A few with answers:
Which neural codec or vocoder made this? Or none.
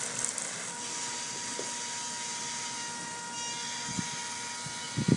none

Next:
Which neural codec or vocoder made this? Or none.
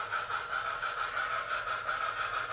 none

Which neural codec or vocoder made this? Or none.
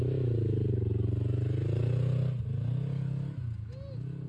none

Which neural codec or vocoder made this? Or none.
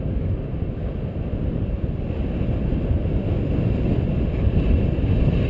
none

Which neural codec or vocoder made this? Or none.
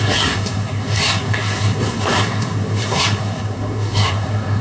codec, SNAC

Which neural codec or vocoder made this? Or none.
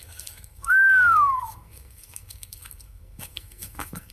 codec, SNAC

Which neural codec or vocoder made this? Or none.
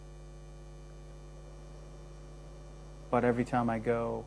none